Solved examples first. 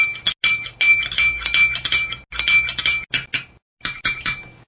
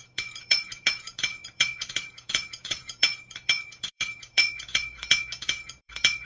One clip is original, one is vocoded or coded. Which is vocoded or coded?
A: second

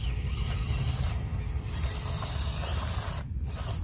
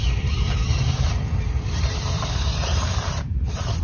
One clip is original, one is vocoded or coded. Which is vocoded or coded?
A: second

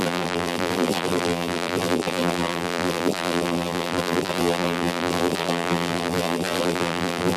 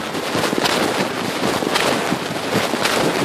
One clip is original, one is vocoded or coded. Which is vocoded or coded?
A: first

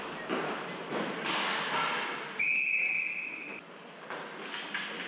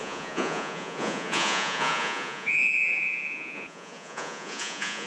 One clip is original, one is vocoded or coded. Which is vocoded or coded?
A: second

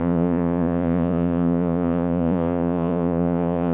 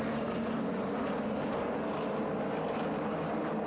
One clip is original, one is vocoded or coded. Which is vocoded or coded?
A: first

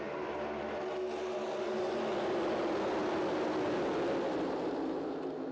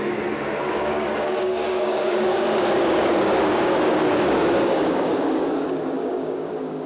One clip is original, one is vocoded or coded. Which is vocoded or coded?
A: second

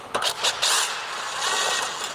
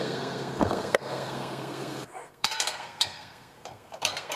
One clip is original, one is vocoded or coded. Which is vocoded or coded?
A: second